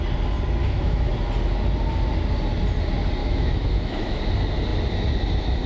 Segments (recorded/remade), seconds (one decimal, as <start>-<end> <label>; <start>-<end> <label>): 0.0-0.6 recorded; 0.6-1.1 remade; 1.1-3.2 recorded; 3.2-4.2 remade; 4.2-5.7 recorded